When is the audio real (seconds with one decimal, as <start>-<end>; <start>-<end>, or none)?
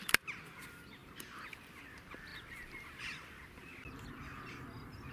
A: 0.0-5.1